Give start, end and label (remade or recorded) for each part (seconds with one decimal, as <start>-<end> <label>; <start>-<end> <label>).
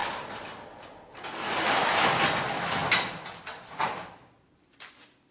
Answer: 0.0-5.3 recorded